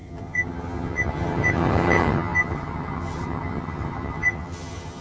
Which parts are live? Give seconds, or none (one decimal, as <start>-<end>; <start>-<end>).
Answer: none